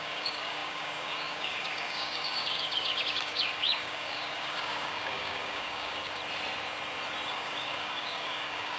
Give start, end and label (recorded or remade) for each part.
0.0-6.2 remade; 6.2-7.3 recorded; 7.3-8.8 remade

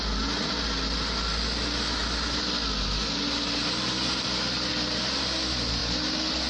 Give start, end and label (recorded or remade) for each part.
0.0-6.5 recorded

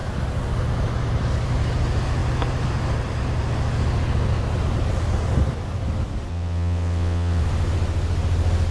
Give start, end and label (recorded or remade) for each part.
0.0-6.3 recorded; 6.3-7.4 remade; 7.4-8.7 recorded